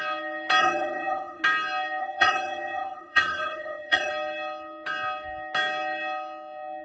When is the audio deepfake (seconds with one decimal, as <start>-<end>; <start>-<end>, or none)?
0.6-1.4; 2.0-4.1